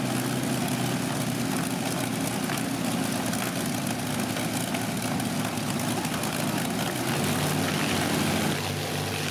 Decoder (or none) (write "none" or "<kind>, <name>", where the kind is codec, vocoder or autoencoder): none